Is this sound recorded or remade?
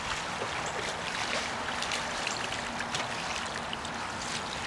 recorded